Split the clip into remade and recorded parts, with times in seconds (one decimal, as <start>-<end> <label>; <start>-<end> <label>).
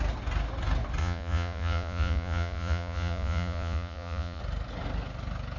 0.0-1.0 recorded; 1.0-4.4 remade; 4.4-5.6 recorded